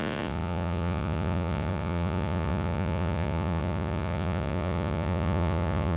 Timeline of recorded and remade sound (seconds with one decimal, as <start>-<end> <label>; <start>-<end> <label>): 0.0-6.0 remade